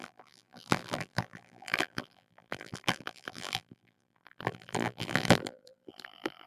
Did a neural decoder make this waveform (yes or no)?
yes